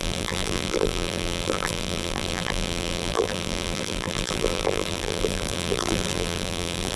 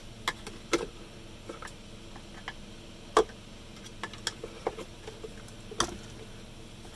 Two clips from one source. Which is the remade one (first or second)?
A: first